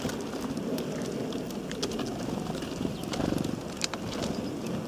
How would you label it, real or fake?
real